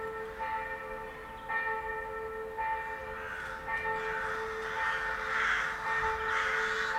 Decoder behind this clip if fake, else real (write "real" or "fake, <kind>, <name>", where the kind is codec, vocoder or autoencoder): real